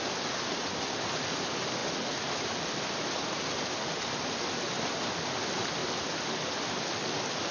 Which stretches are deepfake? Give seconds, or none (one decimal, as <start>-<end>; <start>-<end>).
none